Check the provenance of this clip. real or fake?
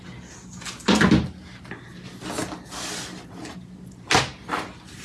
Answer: real